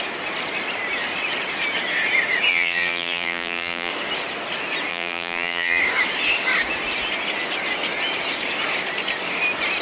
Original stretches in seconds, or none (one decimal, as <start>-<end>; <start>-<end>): 0.0-2.5; 3.9-4.9; 5.8-9.8